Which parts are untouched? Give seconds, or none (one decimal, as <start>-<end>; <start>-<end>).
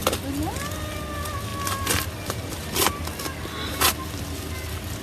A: 0.0-5.0